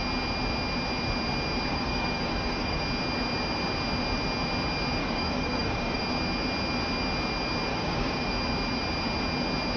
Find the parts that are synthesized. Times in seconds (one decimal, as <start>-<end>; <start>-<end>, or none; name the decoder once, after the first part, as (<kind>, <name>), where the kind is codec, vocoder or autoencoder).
1.7-2.8 (codec, DAC); 5.0-6.0; 7.7-8.3